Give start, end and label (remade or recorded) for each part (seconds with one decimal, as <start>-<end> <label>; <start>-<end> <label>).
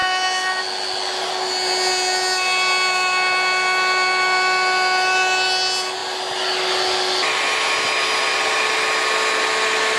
0.0-10.0 recorded